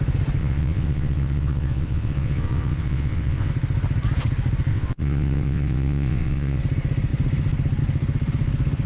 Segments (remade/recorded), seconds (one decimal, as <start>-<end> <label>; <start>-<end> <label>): 0.0-0.4 recorded; 0.4-3.5 remade; 3.5-4.7 recorded; 4.7-6.6 remade; 6.6-8.9 recorded